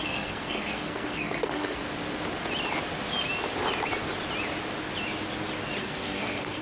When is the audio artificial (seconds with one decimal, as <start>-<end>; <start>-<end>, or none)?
0.0-1.8; 5.8-6.6